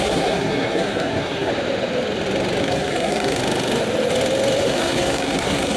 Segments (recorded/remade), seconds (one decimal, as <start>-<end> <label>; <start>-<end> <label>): 0.0-1.5 remade; 1.5-2.6 recorded; 2.6-3.4 remade; 3.4-4.6 recorded; 4.6-5.8 remade